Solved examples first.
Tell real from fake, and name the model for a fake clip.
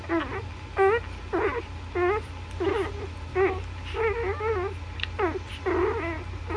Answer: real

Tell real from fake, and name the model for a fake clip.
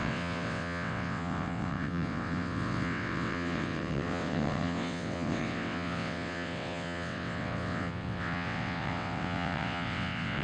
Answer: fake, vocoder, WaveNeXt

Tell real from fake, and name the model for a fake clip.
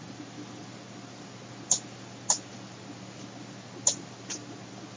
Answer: real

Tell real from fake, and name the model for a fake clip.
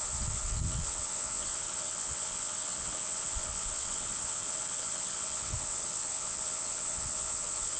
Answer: fake, vocoder, WaveNeXt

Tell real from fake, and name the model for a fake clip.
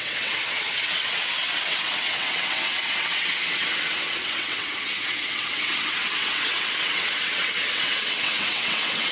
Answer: fake, vocoder, WaveNeXt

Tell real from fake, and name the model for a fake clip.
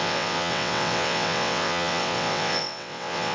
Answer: fake, vocoder, WaveNeXt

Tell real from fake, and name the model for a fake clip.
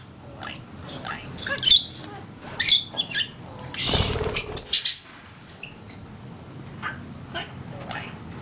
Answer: real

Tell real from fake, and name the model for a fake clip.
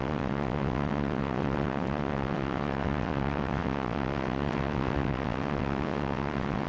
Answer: fake, vocoder, WaveNeXt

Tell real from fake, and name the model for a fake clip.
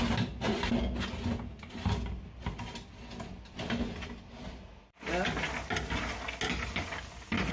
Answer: real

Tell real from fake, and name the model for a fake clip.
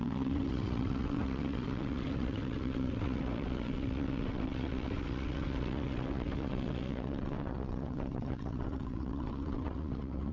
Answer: fake, vocoder, WaveNeXt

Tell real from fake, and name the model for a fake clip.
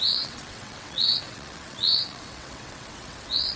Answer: fake, vocoder, WaveNeXt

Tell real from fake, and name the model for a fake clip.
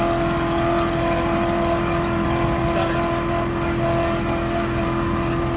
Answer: real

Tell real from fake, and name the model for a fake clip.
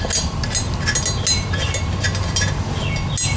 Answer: real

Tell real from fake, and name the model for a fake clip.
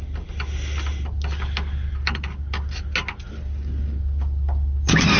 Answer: real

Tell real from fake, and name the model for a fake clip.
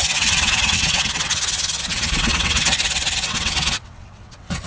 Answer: fake, vocoder, WaveNeXt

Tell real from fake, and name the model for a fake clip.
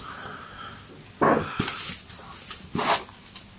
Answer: real